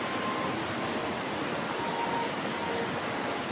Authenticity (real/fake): real